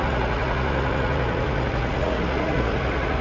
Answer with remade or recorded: remade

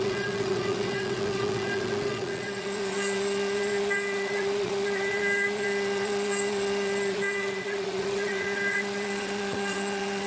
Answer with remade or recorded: remade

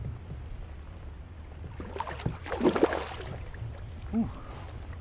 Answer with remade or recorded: recorded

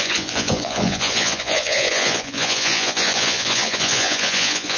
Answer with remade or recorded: remade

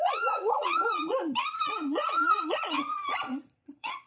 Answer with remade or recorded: remade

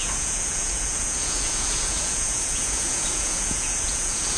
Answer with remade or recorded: remade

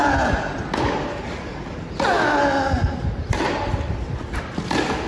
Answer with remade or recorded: recorded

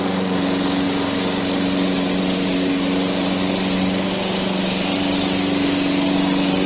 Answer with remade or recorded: recorded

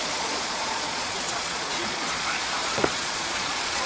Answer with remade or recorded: remade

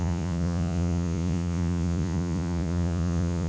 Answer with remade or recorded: remade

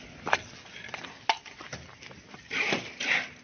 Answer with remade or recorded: recorded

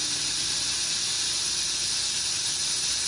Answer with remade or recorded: recorded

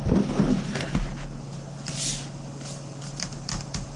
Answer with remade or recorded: recorded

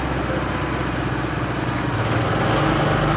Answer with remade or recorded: recorded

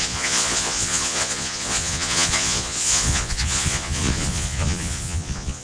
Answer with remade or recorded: remade